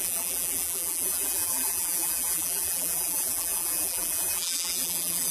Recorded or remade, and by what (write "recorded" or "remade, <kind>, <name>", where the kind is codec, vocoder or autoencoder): remade, vocoder, BigVGAN v2